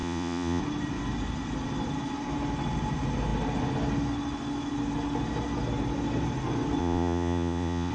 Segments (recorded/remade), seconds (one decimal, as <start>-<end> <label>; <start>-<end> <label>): 0.0-0.6 remade; 0.6-6.8 recorded; 6.8-7.9 remade